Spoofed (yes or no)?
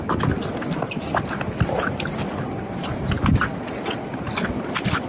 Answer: no